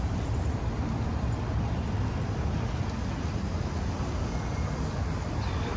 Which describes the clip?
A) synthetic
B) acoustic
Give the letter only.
B